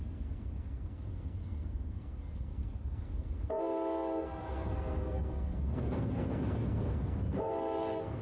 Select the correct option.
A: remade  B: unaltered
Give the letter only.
A